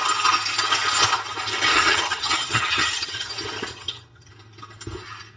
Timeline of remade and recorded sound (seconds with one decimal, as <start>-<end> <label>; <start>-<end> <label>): 0.0-1.7 recorded; 1.7-3.3 remade; 3.3-3.7 recorded; 3.7-4.3 remade; 4.3-5.4 recorded